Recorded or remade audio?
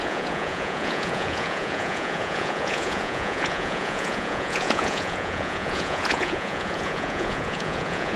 remade